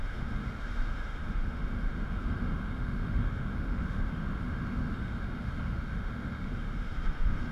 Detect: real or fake fake